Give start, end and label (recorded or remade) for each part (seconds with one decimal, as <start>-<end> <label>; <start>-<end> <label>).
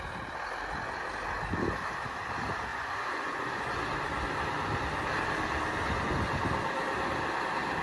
0.0-2.7 recorded; 2.7-3.8 remade; 3.8-7.8 recorded